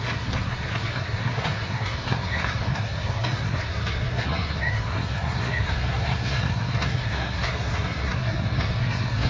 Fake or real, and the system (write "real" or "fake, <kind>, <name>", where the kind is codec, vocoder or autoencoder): fake, codec, SNAC